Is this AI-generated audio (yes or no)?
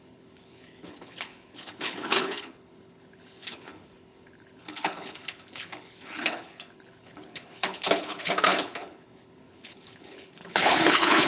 yes